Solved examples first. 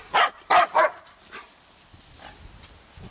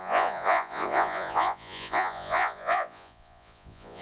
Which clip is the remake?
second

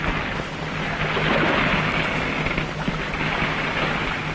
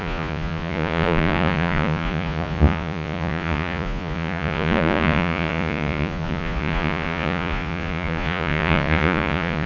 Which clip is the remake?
second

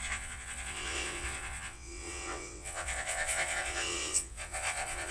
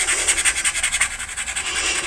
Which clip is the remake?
first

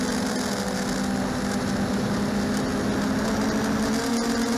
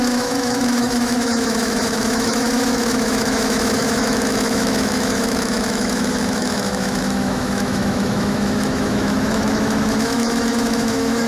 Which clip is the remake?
second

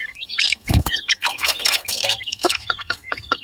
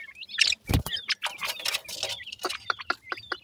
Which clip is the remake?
first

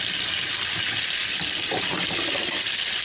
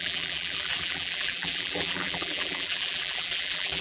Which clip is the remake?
second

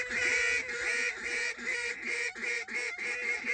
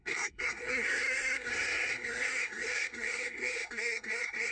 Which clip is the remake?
second